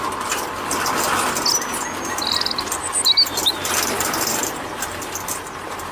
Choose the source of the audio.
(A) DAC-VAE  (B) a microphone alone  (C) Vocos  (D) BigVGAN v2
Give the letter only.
B